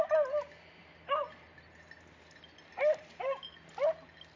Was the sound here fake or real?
real